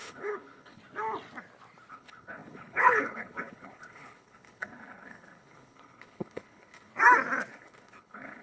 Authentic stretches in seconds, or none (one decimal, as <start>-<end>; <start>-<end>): 0.8-1.9; 6.9-7.5